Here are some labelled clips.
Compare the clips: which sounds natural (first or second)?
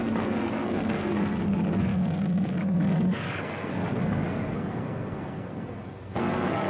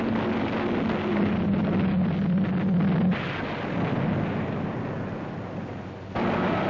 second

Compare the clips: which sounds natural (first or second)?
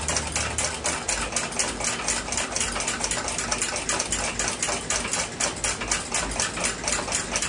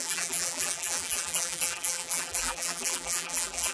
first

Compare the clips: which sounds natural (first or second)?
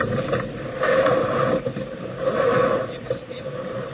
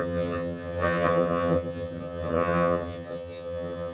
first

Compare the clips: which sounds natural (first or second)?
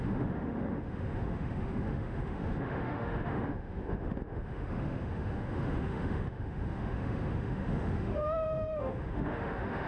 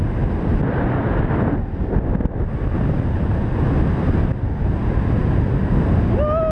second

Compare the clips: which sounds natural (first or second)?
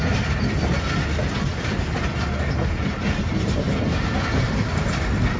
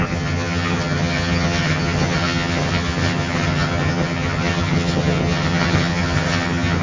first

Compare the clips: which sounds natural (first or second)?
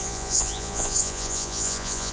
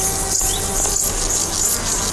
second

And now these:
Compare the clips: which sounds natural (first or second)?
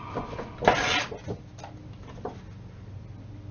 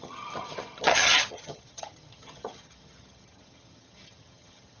first